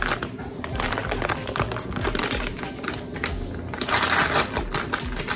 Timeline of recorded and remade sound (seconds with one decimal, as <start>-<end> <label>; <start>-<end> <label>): 0.0-5.4 recorded